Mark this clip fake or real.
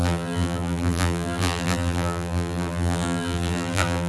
fake